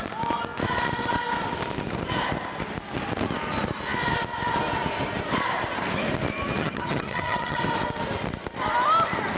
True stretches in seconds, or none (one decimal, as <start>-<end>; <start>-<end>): 0.0-6.6; 7.6-9.4